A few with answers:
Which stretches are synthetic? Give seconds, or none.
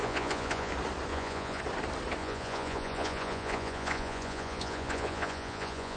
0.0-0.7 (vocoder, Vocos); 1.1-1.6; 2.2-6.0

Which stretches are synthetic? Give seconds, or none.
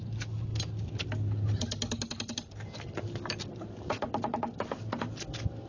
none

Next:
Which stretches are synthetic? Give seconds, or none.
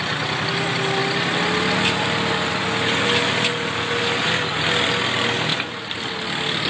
none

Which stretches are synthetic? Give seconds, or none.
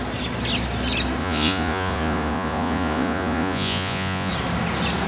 1.2-4.3 (vocoder, Vocos)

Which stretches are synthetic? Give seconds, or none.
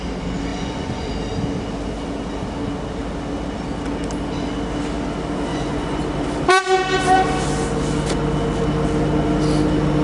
0.5-1.1 (vocoder, Vocos); 5.5-6.0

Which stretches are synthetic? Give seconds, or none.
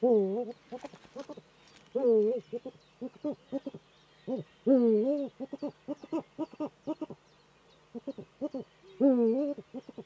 6.0-6.6 (vocoder, Vocos); 7.3-8.8